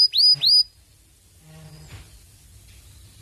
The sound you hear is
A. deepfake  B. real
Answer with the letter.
B